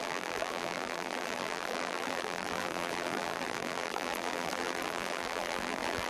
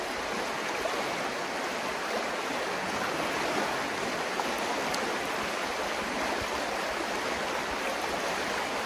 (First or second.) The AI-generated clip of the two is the first